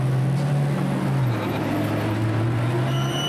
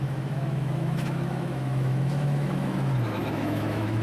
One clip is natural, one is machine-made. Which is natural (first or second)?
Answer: first